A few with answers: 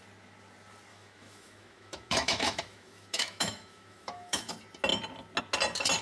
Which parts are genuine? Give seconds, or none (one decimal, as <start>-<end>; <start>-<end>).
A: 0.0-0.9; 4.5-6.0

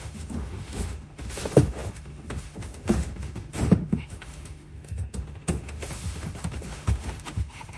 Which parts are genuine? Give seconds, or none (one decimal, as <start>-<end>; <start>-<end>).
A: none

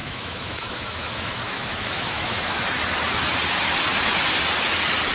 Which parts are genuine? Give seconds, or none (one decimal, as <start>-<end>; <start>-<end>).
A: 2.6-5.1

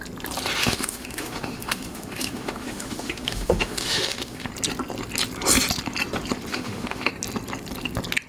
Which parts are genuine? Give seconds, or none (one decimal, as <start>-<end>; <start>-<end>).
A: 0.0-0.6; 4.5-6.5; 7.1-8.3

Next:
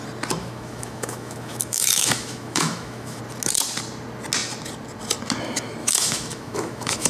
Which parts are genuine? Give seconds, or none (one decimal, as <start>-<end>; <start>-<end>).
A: 0.0-0.4; 3.2-5.8

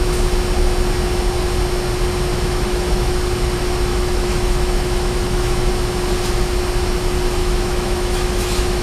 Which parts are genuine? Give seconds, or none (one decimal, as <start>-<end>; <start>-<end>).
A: 0.0-2.3; 3.1-3.9; 5.7-7.4

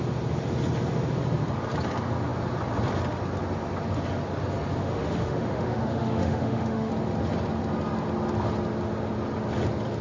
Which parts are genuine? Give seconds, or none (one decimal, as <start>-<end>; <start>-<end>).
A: 0.0-4.8; 6.9-10.0

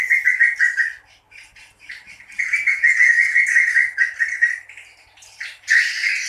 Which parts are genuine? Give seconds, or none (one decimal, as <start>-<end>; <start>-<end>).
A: 0.0-6.3